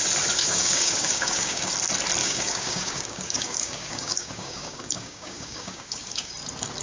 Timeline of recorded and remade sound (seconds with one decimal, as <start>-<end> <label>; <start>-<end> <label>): 0.0-0.4 recorded; 0.4-1.7 remade; 1.7-2.2 recorded; 2.2-6.3 remade; 6.3-6.8 recorded